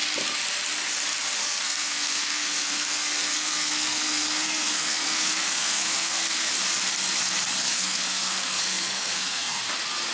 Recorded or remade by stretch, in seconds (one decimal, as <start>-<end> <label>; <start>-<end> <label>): 0.0-1.4 recorded; 1.4-6.5 remade; 6.5-7.6 recorded; 7.6-9.6 remade; 9.6-10.1 recorded